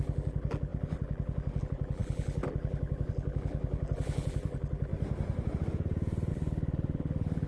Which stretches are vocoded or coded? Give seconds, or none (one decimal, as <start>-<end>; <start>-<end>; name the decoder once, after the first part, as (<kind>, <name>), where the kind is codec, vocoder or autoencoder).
0.0-4.9 (vocoder, BigVGAN v2); 6.3-7.5